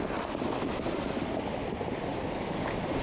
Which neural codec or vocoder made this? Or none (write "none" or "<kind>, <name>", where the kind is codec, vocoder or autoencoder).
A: none